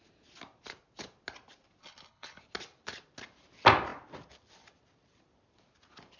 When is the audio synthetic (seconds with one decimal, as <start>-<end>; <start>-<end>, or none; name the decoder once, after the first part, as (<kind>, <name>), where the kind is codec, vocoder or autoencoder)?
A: 1.8-2.4 (codec, HILCodec)